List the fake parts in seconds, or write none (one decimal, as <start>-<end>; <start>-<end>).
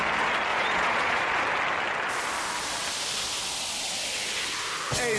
0.5-1.4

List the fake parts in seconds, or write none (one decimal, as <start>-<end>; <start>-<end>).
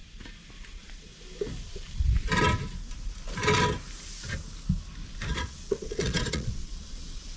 0.7-1.1; 5.3-7.4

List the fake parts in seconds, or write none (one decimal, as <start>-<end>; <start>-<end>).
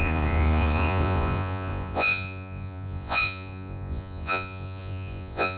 0.0-5.6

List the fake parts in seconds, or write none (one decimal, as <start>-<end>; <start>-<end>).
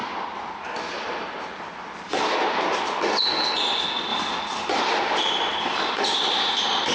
none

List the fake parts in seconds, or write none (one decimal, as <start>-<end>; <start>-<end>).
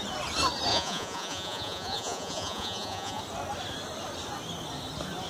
0.7-3.2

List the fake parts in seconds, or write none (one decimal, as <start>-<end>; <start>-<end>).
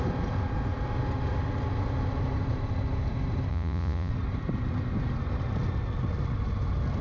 3.5-4.1